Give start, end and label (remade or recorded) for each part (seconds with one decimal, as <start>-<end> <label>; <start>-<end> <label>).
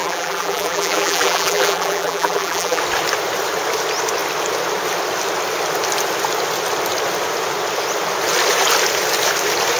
0.0-2.8 remade; 2.8-9.8 recorded